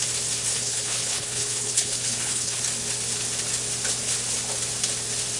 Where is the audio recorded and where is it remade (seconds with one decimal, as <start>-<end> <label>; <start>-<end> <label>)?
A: 0.0-0.5 recorded; 0.5-2.6 remade; 2.6-5.4 recorded